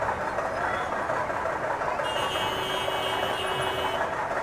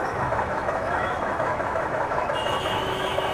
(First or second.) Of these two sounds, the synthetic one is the second